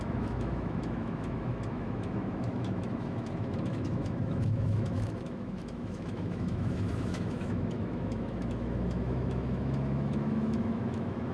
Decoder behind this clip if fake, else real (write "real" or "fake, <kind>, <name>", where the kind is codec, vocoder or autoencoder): fake, autoencoder, DAC-VAE